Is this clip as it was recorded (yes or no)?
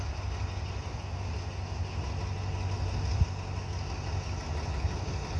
yes